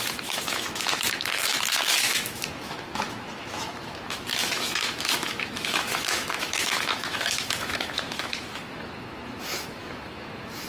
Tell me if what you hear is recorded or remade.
remade